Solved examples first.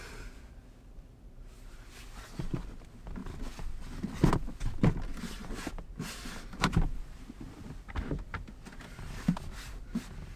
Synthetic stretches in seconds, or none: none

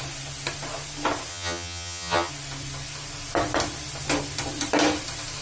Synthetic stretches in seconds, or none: 1.3-2.3

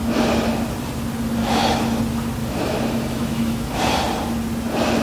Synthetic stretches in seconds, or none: 1.4-2.0; 2.4-3.9

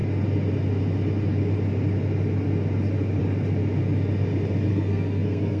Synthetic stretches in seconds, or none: 4.7-5.6

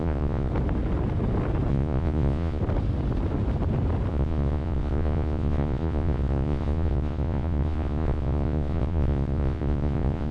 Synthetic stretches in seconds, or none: 0.0-0.5; 1.7-2.6; 4.1-10.3

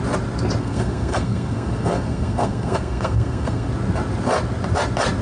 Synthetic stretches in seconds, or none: 0.6-3.7

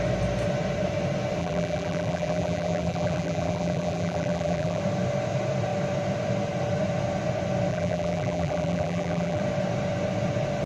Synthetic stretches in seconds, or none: 1.4-4.8; 7.7-9.4